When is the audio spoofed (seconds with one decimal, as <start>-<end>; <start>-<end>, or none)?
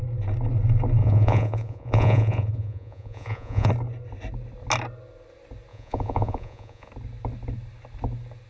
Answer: 1.0-3.7; 5.7-6.9